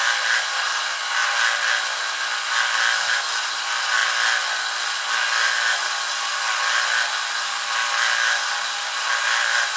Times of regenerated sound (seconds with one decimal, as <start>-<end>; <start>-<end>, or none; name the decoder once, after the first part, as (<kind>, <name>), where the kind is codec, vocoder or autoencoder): 0.0-1.2 (vocoder, BigVGAN v2); 3.4-4.0; 9.1-9.8

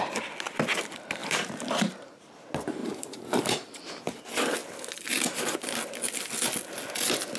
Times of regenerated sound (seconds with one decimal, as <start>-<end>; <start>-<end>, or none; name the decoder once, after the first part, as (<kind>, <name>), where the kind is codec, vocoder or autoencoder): 1.2-2.3 (vocoder, BigVGAN v2); 2.8-3.8

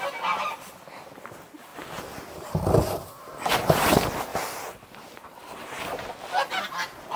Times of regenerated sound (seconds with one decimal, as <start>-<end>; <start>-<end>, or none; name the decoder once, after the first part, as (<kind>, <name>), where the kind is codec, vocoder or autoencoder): 1.7-3.3 (vocoder, BigVGAN v2); 4.3-7.2

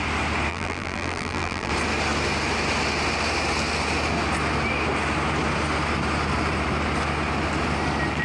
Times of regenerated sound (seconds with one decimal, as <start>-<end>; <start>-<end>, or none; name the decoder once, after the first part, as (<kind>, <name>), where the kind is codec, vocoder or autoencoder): 0.5-1.7 (vocoder, BigVGAN v2)

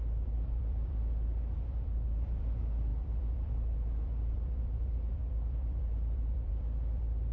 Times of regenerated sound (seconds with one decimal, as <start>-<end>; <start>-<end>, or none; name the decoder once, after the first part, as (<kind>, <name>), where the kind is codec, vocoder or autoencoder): 0.0-7.3 (vocoder, BigVGAN v2)